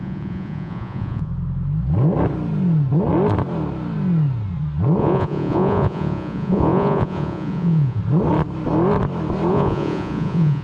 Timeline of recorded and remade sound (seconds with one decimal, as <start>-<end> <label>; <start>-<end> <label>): 0.0-1.3 remade; 1.3-5.0 recorded; 5.0-8.0 remade; 8.0-9.5 recorded; 9.5-10.6 remade